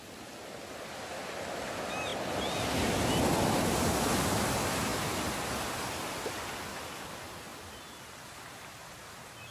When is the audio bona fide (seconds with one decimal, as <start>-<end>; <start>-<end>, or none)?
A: 0.0-9.5